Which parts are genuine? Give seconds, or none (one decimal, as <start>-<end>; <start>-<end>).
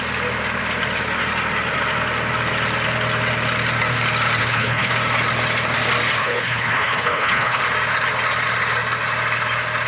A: 0.0-4.4; 4.9-6.2; 7.6-9.9